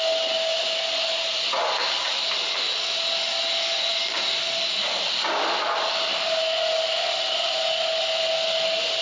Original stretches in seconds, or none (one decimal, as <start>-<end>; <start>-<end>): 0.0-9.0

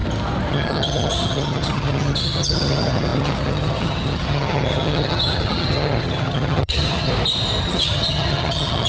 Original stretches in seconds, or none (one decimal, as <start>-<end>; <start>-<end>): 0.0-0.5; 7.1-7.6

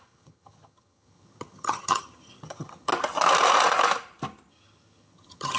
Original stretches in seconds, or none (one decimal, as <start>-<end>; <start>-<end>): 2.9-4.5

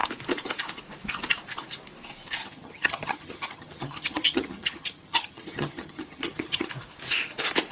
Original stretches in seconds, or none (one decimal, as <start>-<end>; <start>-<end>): 0.0-2.4; 6.7-7.7